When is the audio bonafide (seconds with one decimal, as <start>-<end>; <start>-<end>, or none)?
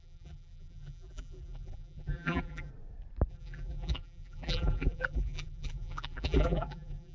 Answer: 2.7-3.3